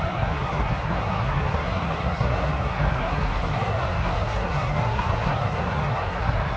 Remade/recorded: remade